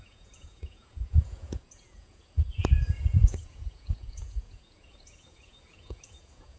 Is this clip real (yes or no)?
no